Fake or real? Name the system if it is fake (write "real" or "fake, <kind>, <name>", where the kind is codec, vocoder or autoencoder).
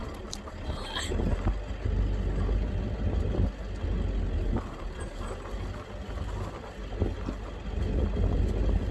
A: real